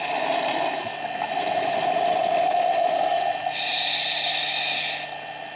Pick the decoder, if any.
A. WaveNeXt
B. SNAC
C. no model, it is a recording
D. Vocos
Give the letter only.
C